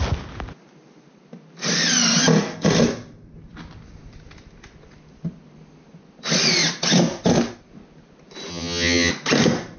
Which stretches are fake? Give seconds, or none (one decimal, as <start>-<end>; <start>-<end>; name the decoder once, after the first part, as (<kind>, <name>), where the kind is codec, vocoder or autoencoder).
8.5-9.1 (vocoder, HiFi-GAN)